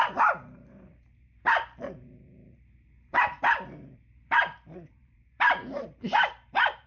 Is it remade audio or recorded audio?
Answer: remade